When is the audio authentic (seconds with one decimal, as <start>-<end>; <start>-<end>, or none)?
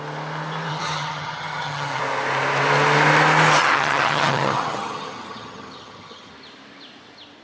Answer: 0.0-0.7; 2.0-3.6; 6.3-7.4